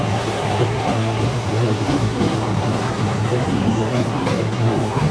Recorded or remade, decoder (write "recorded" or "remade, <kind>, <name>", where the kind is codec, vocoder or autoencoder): remade, codec, SNAC